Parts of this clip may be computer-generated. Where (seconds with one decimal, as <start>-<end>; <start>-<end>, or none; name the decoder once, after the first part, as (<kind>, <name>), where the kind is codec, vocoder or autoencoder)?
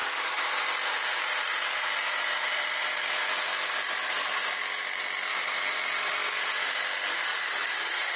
0.0-4.5 (vocoder, BigVGAN v2); 5.3-6.8